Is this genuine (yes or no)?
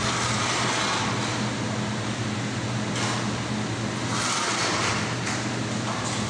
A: yes